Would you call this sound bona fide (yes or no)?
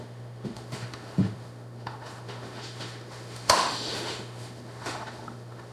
no